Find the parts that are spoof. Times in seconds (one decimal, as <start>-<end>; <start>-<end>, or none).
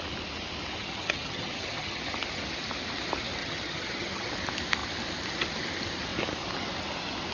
0.8-2.0; 3.4-4.3